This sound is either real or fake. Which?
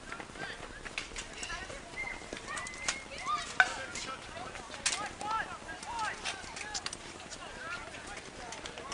real